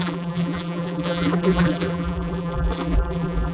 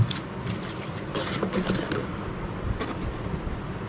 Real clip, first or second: second